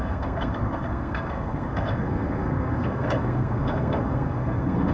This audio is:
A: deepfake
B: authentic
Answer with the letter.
A